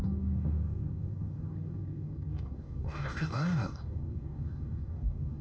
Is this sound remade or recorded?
remade